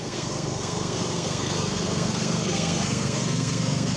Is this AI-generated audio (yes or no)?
yes